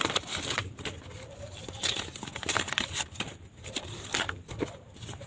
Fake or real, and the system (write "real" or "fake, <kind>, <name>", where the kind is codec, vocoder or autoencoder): fake, vocoder, BigVGAN v2